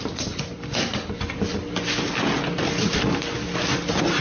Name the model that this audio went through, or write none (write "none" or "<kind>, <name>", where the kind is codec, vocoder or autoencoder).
none